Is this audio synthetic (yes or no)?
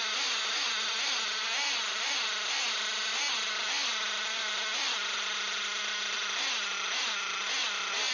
no